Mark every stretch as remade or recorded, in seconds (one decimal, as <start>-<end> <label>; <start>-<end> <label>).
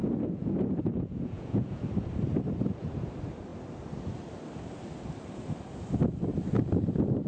0.0-1.9 remade; 1.9-7.3 recorded